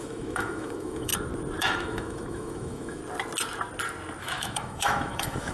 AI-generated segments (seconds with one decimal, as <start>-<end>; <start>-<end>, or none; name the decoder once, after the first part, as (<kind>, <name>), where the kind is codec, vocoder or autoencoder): 0.0-1.1 (autoencoder, DAC-VAE); 1.6-3.0; 4.2-5.5